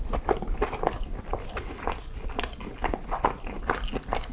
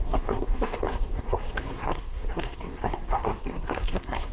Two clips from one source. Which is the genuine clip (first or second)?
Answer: first